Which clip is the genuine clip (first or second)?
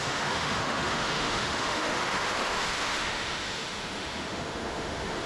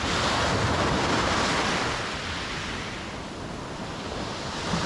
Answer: second